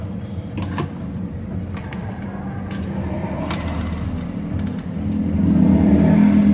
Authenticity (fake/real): real